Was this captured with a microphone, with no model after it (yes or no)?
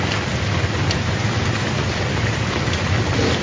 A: yes